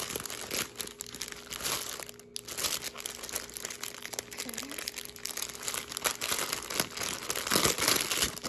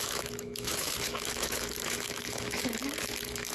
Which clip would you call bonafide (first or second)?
first